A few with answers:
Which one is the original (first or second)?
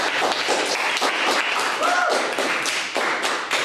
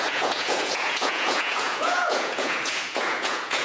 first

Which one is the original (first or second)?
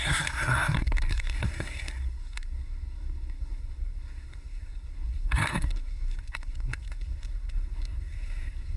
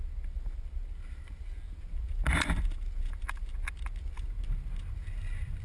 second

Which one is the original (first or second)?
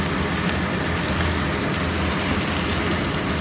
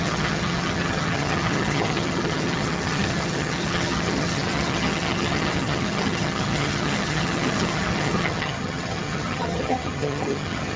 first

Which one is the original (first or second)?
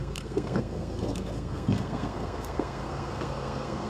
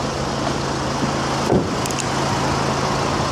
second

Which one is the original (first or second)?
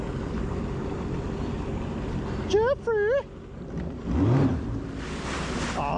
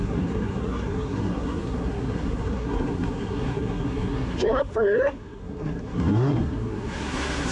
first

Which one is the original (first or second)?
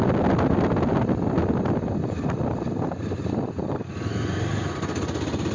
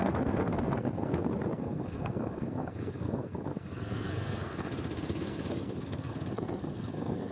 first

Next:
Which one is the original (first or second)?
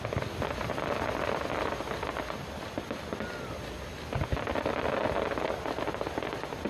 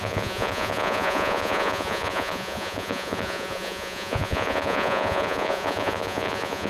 first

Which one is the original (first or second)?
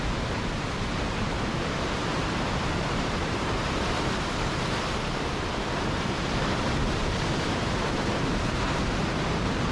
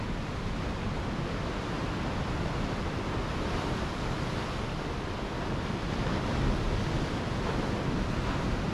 second